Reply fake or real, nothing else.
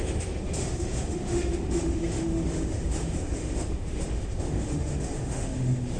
fake